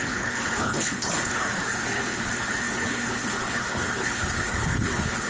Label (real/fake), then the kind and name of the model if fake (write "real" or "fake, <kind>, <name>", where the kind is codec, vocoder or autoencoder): fake, codec, HILCodec